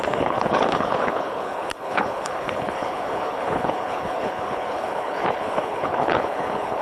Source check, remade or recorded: remade